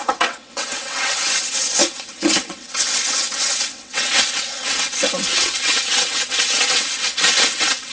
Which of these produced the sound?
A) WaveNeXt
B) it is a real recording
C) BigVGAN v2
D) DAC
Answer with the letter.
A